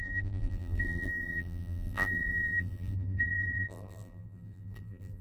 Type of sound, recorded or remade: remade